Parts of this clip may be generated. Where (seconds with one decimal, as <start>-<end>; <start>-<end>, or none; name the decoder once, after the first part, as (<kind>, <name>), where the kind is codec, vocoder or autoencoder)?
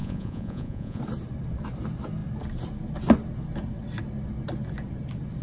0.0-1.0 (vocoder, Vocos)